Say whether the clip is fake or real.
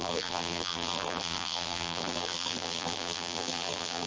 fake